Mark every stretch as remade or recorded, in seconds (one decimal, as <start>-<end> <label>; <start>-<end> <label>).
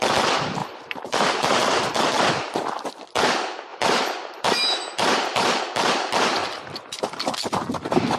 0.0-0.6 recorded; 0.6-1.9 remade; 1.9-3.7 recorded; 3.7-5.6 remade; 5.6-8.2 recorded